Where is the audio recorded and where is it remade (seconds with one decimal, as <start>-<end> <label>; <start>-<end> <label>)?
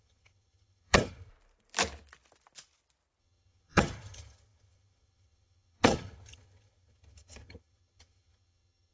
0.0-1.3 remade; 1.3-3.2 recorded; 3.2-8.9 remade